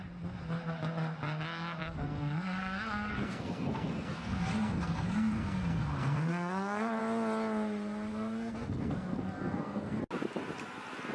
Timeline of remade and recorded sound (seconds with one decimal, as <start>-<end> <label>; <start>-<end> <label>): 0.0-1.8 recorded; 1.8-7.0 remade; 7.0-8.1 recorded; 8.1-10.0 remade; 10.0-11.1 recorded

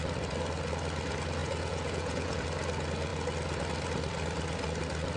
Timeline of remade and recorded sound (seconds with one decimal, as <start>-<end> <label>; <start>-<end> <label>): 0.0-1.4 recorded; 1.4-2.4 remade; 2.4-5.2 recorded